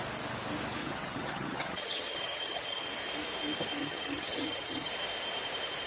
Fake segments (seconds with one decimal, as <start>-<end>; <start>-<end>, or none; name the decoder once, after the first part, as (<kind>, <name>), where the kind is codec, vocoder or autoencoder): 0.8-2.9 (vocoder, HiFi-GAN); 3.8-4.9